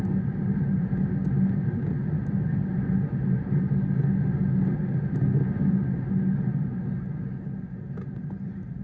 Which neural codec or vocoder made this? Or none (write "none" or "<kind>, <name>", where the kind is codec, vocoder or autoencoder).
none